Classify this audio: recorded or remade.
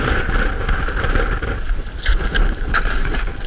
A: remade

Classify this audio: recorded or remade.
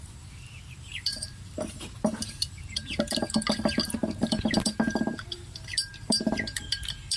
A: remade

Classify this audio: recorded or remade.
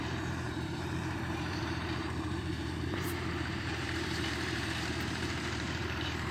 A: remade